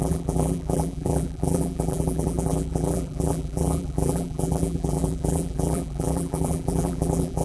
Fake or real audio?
fake